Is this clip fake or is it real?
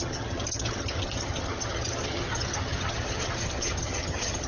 fake